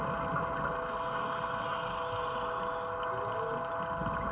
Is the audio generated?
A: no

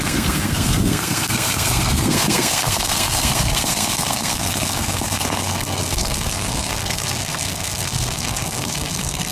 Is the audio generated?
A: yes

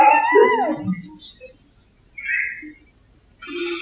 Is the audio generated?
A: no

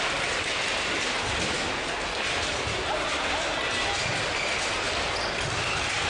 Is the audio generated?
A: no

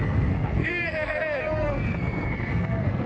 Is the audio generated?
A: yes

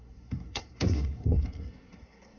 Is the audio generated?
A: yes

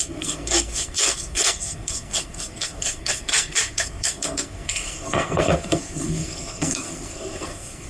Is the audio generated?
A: yes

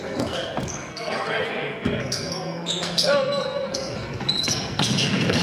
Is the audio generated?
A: yes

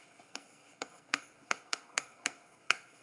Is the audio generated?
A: yes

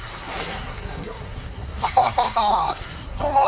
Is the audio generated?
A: yes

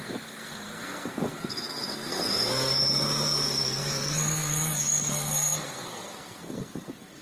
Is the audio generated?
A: yes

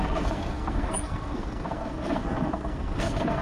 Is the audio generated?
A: yes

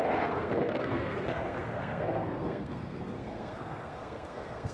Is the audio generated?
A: yes